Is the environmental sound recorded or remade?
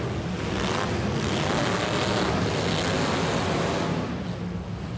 recorded